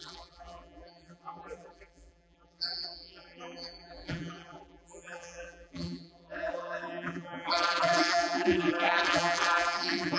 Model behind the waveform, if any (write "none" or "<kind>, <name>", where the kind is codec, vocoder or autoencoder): vocoder, BigVGAN v2